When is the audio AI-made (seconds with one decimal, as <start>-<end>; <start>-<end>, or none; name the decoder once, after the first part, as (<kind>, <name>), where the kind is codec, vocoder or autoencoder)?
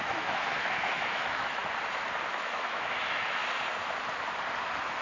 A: 0.0-1.6 (autoencoder, DAC-VAE); 2.3-3.4